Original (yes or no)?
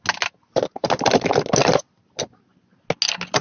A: yes